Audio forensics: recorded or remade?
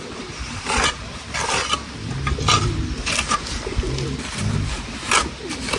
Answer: recorded